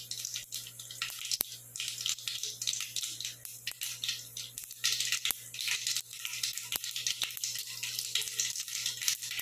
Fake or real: real